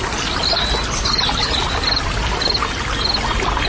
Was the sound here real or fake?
real